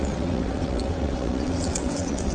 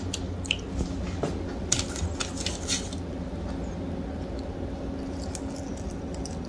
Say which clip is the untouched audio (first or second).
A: second